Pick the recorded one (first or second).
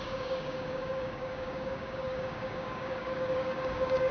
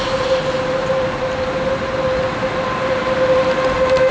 second